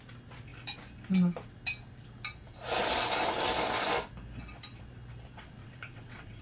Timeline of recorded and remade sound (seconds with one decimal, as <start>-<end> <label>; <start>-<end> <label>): 0.0-5.6 recorded; 5.6-6.4 remade